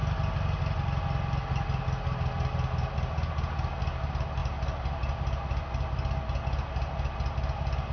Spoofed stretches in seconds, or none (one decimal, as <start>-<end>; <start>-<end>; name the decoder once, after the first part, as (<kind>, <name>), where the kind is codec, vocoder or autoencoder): none